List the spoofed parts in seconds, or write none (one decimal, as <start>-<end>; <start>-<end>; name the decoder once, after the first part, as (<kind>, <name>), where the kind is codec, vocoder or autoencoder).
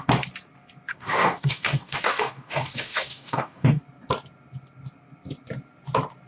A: 0.9-3.8 (codec, DAC)